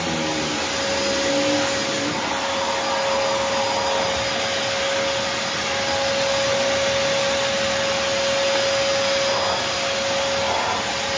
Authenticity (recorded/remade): recorded